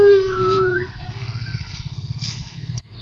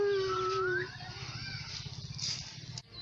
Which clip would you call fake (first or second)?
first